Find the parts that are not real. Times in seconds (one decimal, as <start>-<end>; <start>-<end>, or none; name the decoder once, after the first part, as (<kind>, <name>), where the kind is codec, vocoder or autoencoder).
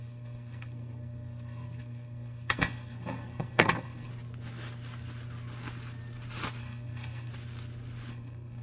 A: 0.0-4.1 (codec, SNAC); 6.6-7.3; 8.1-8.6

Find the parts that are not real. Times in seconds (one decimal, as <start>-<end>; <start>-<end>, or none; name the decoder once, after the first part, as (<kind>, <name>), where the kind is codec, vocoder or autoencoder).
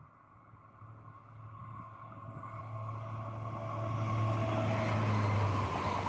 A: none